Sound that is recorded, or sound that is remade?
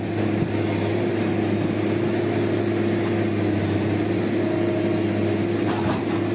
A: recorded